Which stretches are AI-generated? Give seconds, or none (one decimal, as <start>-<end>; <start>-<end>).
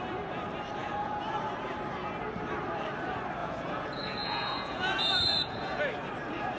0.8-1.3; 3.4-5.8